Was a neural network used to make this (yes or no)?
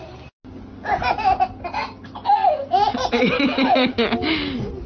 no